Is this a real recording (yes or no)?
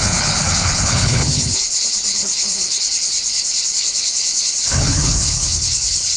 no